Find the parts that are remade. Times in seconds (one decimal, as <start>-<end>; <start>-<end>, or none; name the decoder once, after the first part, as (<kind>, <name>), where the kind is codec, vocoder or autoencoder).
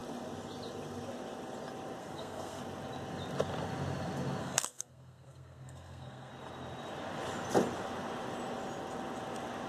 2.0-2.6 (codec, SNAC); 4.4-6.3